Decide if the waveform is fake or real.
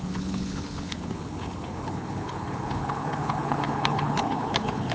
fake